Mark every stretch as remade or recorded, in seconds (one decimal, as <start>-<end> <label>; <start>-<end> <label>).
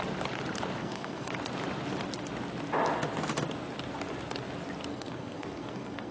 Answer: 0.0-0.8 recorded; 0.8-1.3 remade; 1.3-4.9 recorded; 4.9-6.1 remade